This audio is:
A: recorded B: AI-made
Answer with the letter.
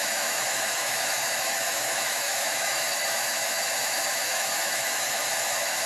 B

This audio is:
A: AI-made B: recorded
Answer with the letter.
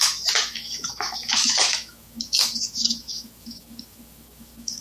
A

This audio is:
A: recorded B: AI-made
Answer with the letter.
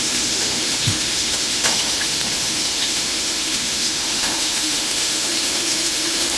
B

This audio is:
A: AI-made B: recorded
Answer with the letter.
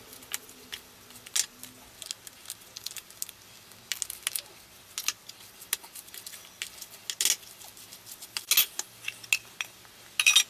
B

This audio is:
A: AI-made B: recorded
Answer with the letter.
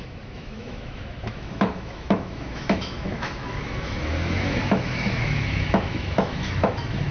A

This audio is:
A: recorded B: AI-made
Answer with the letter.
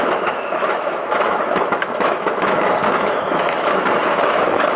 B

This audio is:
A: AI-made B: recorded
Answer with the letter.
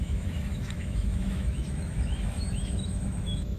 A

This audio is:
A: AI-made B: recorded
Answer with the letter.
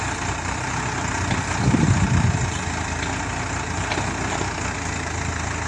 B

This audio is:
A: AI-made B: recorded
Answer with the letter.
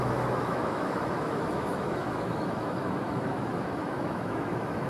A